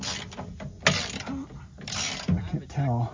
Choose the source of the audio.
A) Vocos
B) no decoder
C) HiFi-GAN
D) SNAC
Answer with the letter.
B